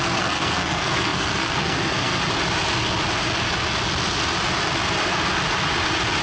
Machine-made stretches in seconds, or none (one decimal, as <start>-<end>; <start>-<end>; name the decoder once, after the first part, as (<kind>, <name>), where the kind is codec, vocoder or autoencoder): 0.0-2.2 (codec, SNAC)

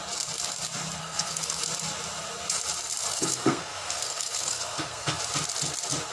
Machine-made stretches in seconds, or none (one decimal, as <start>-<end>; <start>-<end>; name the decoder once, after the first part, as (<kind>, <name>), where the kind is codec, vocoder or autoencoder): 1.0-1.6 (codec, SNAC); 3.1-5.2

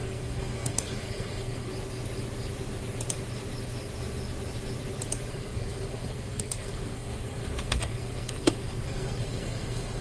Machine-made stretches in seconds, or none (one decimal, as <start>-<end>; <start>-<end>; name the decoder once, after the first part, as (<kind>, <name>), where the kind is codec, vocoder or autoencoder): 0.0-1.7 (codec, SNAC); 5.3-10.0